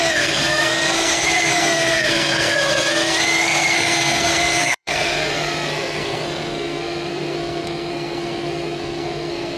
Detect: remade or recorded remade